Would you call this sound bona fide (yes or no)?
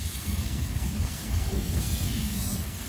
no